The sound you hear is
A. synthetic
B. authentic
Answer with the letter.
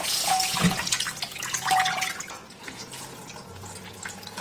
A